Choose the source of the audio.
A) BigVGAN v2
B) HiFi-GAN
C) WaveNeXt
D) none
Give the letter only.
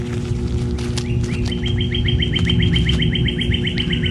D